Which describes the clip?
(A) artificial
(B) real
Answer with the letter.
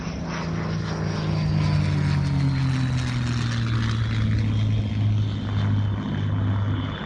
B